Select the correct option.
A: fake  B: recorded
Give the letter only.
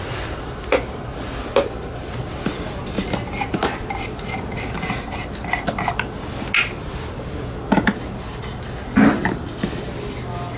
B